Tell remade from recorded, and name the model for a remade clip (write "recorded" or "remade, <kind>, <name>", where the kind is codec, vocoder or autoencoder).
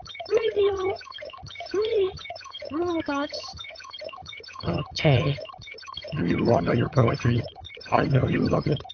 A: remade, vocoder, HiFi-GAN